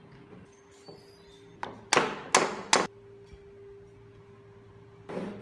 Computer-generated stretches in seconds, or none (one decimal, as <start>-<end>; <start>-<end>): none